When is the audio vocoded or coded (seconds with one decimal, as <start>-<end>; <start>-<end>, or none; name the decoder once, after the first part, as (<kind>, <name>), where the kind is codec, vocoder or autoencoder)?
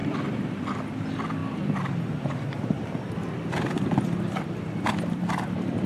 none